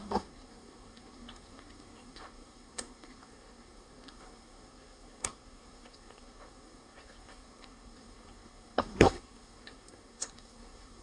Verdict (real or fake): fake